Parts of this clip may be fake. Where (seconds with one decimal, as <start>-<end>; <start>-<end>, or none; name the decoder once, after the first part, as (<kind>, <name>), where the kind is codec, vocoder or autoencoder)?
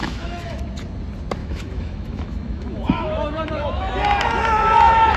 0.0-0.6 (autoencoder, DAC-VAE); 1.4-3.9